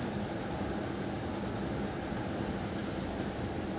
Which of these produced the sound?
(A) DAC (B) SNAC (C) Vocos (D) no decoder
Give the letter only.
D